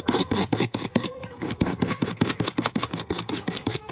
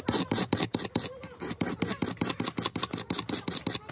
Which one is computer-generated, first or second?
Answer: first